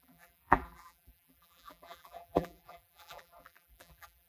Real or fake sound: fake